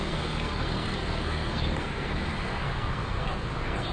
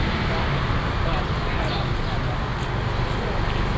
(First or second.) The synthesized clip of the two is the first